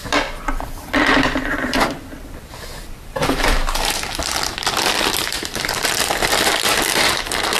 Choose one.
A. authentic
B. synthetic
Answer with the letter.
B